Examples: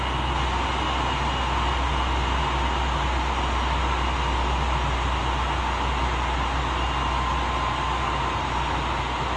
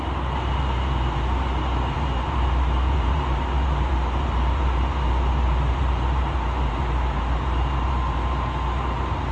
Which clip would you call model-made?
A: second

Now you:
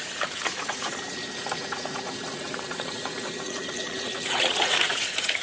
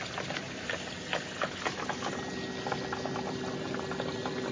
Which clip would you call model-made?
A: first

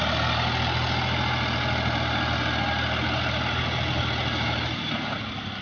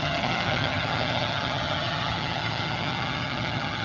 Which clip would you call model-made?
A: second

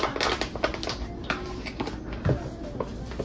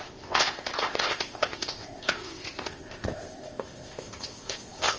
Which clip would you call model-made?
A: second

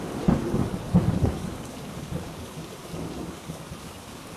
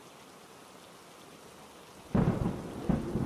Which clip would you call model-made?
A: first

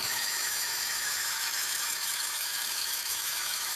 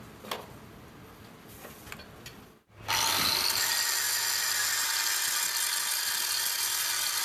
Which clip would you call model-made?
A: first